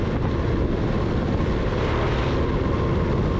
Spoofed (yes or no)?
no